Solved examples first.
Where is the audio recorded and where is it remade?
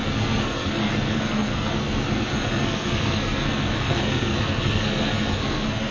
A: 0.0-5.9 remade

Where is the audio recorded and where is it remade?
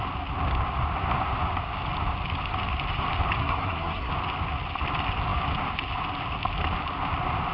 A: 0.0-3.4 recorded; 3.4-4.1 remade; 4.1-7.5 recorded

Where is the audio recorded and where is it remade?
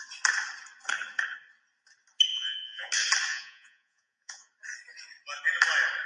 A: 0.0-2.3 recorded; 2.3-2.9 remade; 2.9-3.3 recorded; 3.3-4.5 remade; 4.5-6.1 recorded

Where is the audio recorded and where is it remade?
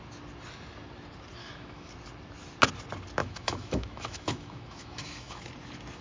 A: 0.0-1.4 recorded; 1.4-1.9 remade; 1.9-3.2 recorded; 3.2-5.4 remade; 5.4-6.0 recorded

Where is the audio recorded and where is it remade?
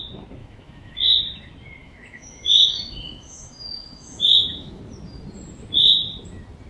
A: 0.0-0.4 recorded; 0.4-1.2 remade; 1.2-1.8 recorded; 1.8-4.8 remade; 4.8-6.7 recorded